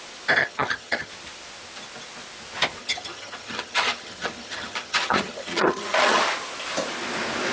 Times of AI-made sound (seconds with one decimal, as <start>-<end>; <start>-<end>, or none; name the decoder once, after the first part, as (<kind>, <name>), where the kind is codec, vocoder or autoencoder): 0.4-1.1 (vocoder, HiFi-GAN); 2.8-6.2